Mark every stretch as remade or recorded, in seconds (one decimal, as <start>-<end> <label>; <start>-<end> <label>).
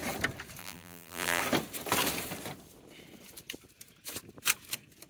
0.0-0.6 recorded; 0.6-1.4 remade; 1.4-5.1 recorded